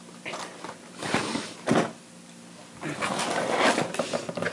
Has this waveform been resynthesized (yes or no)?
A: no